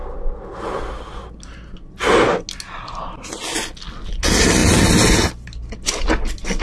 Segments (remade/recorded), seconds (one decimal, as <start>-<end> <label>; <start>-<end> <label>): 0.0-6.6 recorded